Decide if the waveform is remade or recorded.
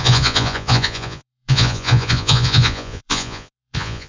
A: remade